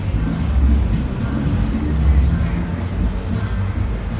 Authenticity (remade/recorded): recorded